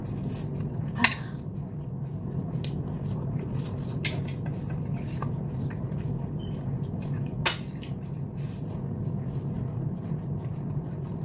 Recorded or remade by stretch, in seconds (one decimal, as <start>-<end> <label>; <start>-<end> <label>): 0.0-11.2 recorded

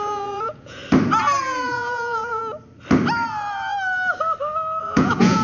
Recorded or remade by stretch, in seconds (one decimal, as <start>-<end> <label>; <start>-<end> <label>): 0.0-0.8 remade; 0.8-1.4 recorded; 1.4-2.4 remade; 2.4-4.8 recorded; 4.8-5.4 remade

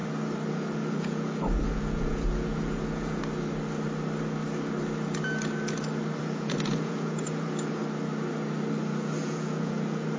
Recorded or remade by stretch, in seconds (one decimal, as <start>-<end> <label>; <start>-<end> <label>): 0.0-0.5 recorded; 0.5-3.2 remade; 3.2-6.2 recorded; 6.2-7.8 remade; 7.8-9.2 recorded; 9.2-10.2 remade

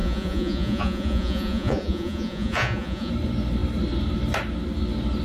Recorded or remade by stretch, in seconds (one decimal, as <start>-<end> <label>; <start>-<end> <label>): 0.0-3.1 remade; 3.1-5.2 recorded

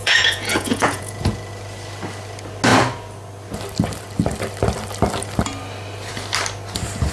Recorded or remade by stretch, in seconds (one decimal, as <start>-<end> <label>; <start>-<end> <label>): 0.0-1.5 remade; 1.5-7.1 recorded

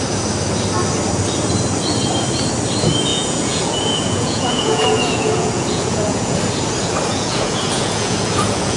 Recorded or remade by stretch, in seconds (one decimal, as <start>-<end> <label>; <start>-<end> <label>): 0.0-3.1 recorded; 3.1-6.4 remade; 6.4-7.1 recorded; 7.1-8.8 remade